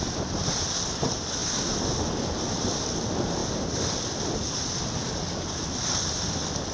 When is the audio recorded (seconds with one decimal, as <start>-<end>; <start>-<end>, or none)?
1.4-2.5; 3.4-6.1